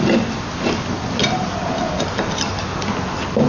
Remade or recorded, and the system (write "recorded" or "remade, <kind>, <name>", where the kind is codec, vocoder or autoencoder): recorded